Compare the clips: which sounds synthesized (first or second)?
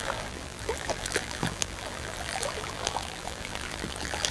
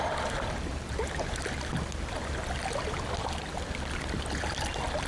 first